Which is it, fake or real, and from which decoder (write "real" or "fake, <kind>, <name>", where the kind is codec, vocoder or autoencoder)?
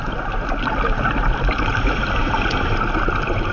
real